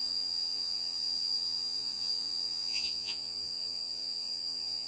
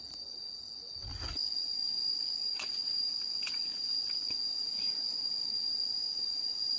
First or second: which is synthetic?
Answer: first